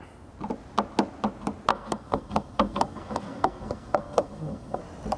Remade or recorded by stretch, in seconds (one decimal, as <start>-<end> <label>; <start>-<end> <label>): 0.0-1.7 recorded; 1.7-4.8 remade; 4.8-5.2 recorded